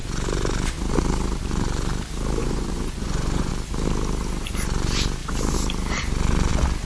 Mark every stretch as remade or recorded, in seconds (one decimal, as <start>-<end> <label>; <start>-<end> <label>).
0.0-2.4 recorded; 2.4-3.5 remade; 3.5-6.9 recorded

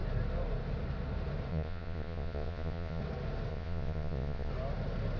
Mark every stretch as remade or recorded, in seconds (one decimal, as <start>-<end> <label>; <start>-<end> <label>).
0.0-1.5 recorded; 1.5-3.0 remade; 3.0-3.5 recorded; 3.5-4.5 remade; 4.5-5.2 recorded

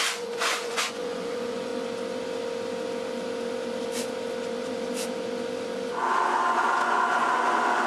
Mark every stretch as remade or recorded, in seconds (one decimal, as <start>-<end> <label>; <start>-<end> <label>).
0.0-1.7 remade; 1.7-5.9 recorded; 5.9-7.9 remade

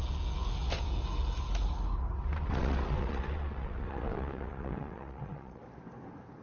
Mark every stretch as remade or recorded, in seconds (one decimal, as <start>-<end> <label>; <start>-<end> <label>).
0.0-2.3 recorded; 2.3-5.6 remade; 5.6-6.4 recorded